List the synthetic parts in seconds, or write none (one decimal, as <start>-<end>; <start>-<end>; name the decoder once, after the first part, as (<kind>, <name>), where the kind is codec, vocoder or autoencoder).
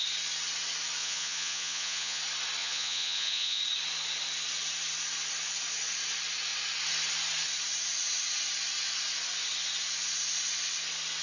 1.0-2.2 (vocoder, Vocos); 2.6-3.6